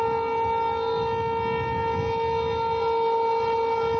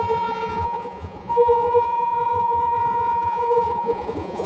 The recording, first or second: first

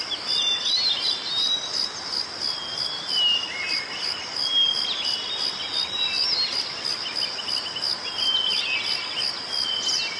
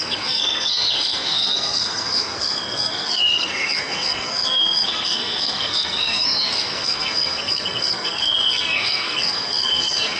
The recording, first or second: first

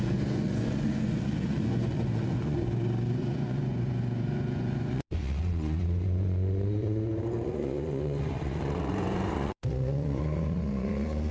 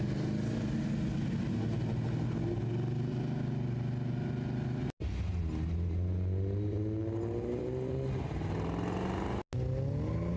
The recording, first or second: second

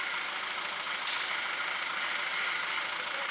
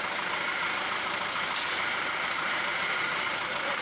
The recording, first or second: first